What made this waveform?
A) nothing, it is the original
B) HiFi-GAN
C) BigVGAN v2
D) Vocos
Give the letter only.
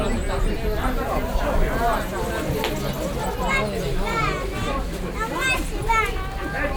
A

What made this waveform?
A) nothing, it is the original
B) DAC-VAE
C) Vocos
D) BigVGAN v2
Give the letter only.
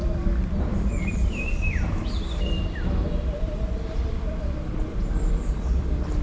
D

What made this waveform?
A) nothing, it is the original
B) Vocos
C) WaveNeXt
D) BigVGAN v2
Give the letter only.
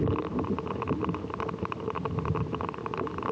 A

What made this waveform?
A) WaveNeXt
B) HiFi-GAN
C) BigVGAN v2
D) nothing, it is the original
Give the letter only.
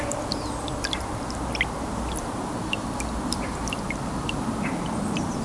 D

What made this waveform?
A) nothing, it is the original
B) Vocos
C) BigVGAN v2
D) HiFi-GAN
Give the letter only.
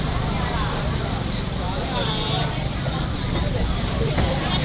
C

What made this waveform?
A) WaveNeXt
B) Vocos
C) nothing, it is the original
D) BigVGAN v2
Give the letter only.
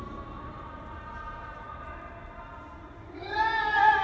C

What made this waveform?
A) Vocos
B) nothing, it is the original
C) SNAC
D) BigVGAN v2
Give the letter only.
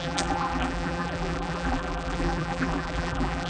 D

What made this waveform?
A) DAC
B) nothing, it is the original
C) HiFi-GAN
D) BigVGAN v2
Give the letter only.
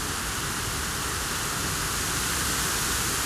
B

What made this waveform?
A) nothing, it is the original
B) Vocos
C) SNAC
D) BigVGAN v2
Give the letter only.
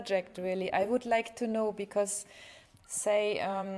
D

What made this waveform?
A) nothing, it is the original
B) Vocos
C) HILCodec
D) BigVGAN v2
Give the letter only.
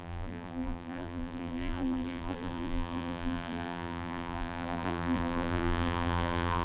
D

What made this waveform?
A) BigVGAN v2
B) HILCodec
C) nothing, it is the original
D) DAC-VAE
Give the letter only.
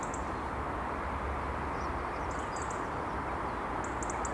C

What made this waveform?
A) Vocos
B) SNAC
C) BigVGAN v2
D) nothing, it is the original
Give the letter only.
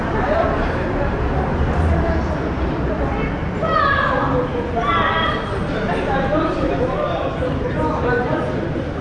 D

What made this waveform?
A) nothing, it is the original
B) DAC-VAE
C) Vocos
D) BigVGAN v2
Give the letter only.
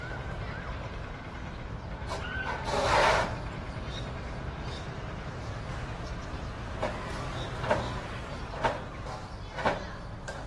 D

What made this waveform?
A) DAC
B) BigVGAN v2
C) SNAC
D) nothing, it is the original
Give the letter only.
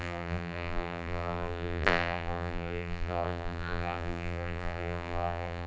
B